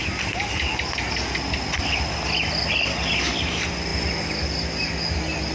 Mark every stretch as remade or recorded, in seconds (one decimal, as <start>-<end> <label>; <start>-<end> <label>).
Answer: 0.0-3.9 recorded; 3.9-4.5 remade; 4.5-5.5 recorded